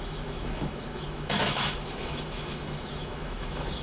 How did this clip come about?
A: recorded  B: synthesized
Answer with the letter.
B